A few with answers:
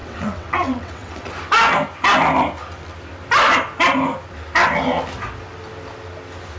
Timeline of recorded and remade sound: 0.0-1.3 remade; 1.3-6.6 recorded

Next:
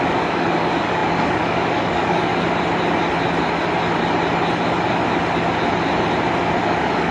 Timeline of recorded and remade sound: 0.0-2.3 remade; 2.3-6.6 recorded; 6.6-7.1 remade

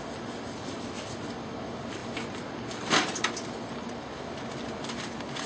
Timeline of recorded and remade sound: 0.0-5.5 recorded

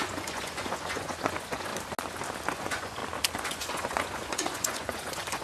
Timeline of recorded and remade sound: 0.0-1.7 remade; 1.7-2.5 recorded; 2.5-3.0 remade; 3.0-3.5 recorded; 3.5-5.4 remade

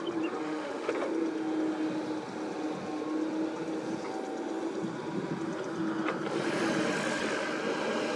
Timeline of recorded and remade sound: 0.0-0.4 recorded; 0.4-0.9 remade; 0.9-8.2 recorded

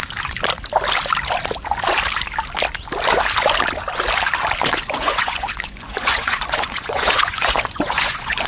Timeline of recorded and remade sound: 0.0-4.6 recorded; 4.6-8.5 remade